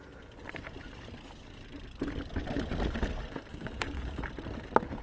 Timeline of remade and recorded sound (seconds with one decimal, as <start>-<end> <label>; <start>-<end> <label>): 0.0-3.5 recorded; 3.5-4.2 remade; 4.2-5.0 recorded